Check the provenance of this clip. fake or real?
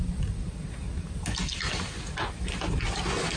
real